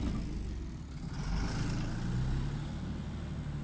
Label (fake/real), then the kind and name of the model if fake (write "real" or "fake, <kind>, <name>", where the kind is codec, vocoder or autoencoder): real